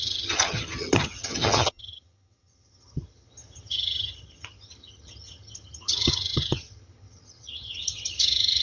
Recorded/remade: remade